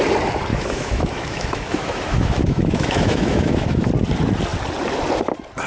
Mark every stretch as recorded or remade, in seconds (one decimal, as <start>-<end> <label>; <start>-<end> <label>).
0.0-0.5 recorded; 0.5-3.9 remade; 3.9-5.7 recorded